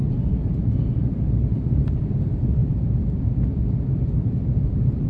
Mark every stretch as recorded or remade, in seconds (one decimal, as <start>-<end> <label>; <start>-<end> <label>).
0.0-1.5 recorded; 1.5-5.1 remade